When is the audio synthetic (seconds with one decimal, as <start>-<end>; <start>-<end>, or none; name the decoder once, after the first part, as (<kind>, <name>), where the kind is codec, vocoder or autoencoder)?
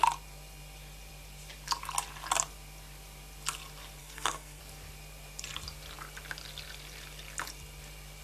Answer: 4.0-4.6 (codec, SNAC)